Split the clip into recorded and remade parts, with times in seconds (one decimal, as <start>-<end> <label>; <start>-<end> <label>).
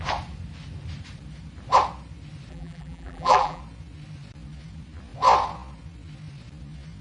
0.0-2.5 recorded; 2.5-3.6 remade; 3.6-7.0 recorded